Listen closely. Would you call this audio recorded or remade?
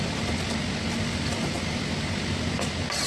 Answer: recorded